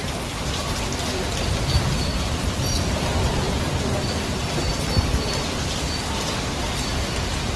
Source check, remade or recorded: recorded